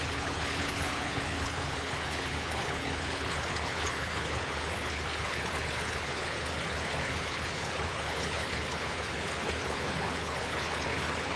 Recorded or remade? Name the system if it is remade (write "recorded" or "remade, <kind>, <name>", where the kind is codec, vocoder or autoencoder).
remade, codec, HILCodec